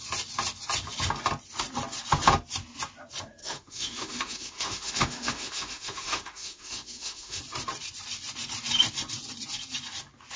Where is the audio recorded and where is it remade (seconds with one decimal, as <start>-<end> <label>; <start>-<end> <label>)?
0.0-3.4 recorded; 3.4-7.4 remade; 7.4-10.4 recorded